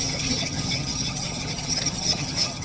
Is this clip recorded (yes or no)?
no